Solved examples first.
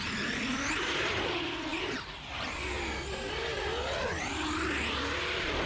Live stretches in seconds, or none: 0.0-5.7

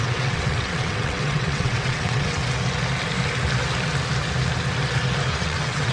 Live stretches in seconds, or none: 2.4-5.3